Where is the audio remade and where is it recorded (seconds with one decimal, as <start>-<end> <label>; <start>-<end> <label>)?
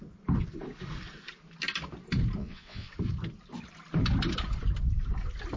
0.0-2.4 recorded; 2.4-2.9 remade; 2.9-5.6 recorded